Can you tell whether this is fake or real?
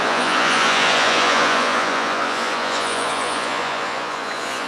fake